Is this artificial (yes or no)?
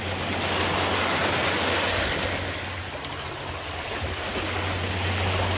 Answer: no